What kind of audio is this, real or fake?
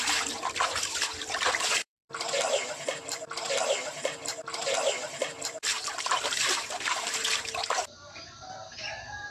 fake